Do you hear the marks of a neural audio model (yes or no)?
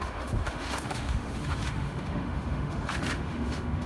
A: yes